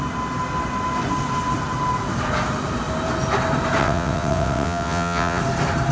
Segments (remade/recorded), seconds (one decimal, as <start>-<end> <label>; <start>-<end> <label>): 0.0-3.8 recorded; 3.8-5.4 remade; 5.4-5.9 recorded